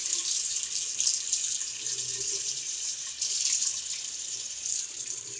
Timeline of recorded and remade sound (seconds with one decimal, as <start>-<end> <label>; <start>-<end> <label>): 0.0-0.6 remade; 0.6-2.1 recorded; 2.1-5.4 remade